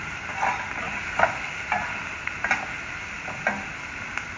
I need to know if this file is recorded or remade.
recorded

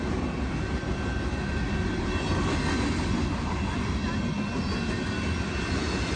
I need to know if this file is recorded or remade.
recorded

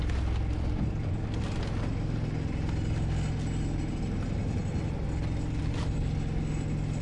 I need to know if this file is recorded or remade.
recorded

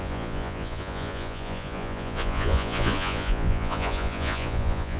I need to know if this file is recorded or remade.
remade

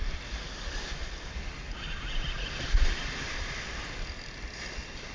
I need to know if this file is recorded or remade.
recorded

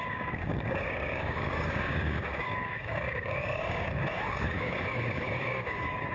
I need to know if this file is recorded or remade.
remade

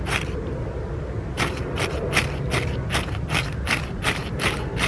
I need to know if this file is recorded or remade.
recorded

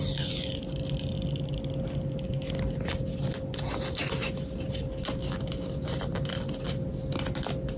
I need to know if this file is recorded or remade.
recorded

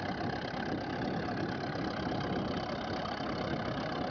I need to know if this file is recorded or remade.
recorded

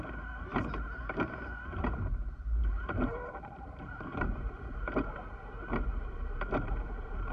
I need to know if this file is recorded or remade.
remade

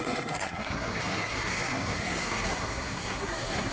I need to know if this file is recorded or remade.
remade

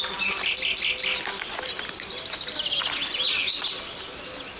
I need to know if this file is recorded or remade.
recorded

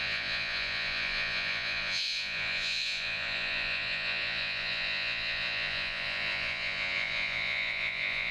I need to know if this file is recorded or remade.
remade